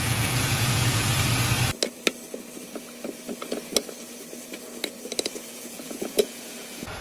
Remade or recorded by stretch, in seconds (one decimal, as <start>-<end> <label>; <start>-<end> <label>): 0.0-1.1 remade; 1.1-5.2 recorded; 5.2-7.0 remade